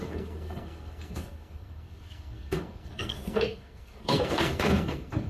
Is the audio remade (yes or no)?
yes